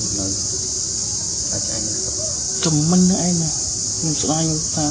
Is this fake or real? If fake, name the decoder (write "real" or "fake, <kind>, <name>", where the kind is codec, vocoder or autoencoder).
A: real